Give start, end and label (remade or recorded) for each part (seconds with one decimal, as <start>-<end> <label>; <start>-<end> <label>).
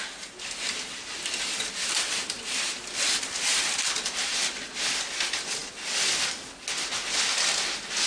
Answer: 0.0-8.1 recorded